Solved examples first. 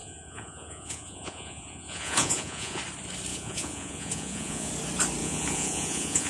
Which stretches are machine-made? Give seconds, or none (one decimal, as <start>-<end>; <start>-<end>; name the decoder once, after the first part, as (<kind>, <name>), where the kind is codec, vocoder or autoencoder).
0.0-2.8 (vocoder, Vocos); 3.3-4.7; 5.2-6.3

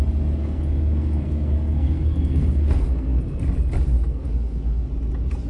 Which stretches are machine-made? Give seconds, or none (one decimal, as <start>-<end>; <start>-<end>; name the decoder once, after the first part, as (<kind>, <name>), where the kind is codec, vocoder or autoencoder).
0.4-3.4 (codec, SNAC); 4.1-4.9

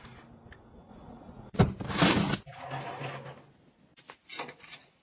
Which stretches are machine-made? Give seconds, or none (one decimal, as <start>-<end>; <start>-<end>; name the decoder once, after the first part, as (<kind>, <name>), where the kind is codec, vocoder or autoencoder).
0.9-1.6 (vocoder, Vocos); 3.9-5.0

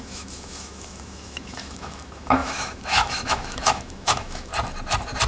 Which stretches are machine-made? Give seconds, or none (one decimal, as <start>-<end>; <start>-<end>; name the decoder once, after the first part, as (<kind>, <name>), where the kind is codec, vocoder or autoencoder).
0.0-4.5 (autoencoder, DAC-VAE)

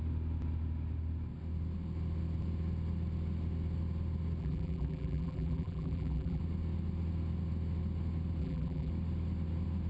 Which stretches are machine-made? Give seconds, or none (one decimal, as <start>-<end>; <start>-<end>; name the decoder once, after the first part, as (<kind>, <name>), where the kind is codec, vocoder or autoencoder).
4.4-6.4 (vocoder, BigVGAN v2); 8.4-8.9

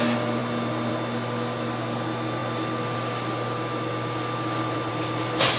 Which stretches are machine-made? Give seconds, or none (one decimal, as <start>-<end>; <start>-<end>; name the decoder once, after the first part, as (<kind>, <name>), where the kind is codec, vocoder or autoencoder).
none

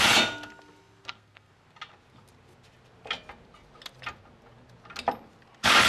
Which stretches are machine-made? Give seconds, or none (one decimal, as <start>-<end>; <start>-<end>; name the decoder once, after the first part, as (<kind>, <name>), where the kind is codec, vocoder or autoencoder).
1.0-1.5 (codec, SNAC)

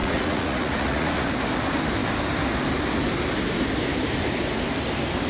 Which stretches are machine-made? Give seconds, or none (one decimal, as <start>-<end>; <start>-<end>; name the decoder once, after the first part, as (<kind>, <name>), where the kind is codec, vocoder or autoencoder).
0.0-1.3 (vocoder, Vocos)